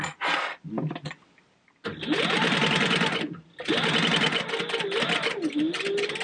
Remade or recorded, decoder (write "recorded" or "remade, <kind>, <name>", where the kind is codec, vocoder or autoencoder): recorded